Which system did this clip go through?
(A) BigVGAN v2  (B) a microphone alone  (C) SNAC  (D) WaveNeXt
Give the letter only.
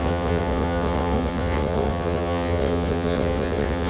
D